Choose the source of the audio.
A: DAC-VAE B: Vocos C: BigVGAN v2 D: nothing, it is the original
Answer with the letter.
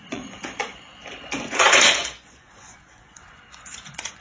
B